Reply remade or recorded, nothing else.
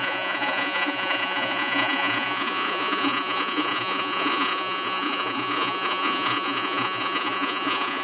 remade